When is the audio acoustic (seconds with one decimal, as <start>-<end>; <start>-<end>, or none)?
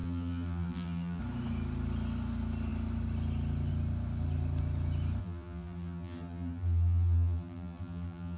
1.2-5.2